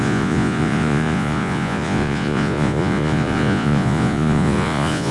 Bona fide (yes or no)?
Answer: no